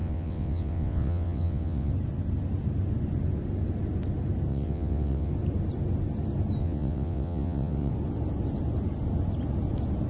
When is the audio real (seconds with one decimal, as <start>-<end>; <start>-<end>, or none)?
1.9-4.5; 5.3-6.6; 7.9-10.1